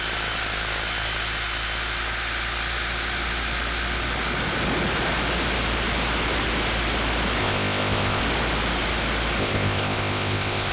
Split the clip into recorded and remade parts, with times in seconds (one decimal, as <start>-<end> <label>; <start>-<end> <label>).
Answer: 0.0-7.4 recorded; 7.4-8.2 remade; 8.2-9.4 recorded; 9.4-10.7 remade